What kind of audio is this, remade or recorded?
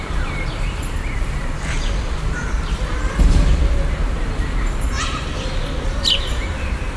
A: remade